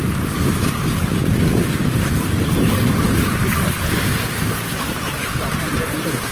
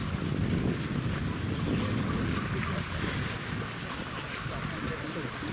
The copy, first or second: first